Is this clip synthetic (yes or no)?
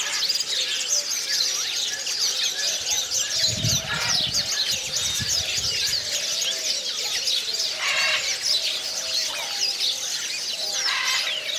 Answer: no